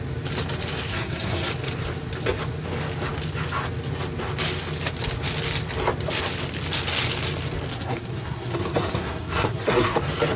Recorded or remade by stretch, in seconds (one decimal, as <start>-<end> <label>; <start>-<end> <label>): 0.0-0.9 recorded; 0.9-1.5 remade; 1.5-7.7 recorded; 7.7-10.0 remade; 10.0-10.4 recorded